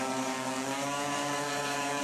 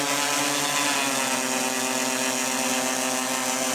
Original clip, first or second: second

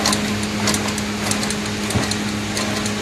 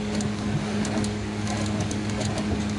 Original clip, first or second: first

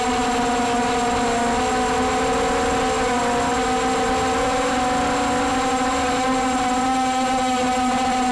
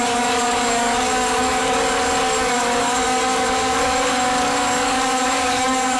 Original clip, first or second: first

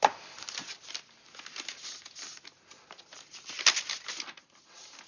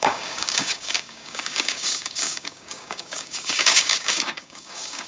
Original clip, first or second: first